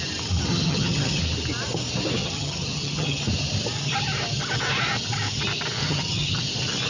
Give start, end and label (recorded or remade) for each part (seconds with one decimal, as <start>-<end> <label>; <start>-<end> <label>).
0.0-0.5 recorded; 0.5-1.2 remade; 1.2-2.2 recorded; 2.2-3.2 remade; 3.2-5.8 recorded; 5.8-6.4 remade; 6.4-6.9 recorded